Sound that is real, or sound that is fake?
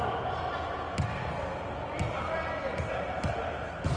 real